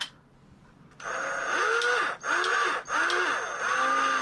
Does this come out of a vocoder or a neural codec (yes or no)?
no